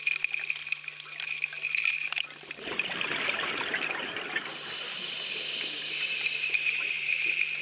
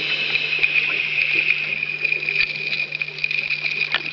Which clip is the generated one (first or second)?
first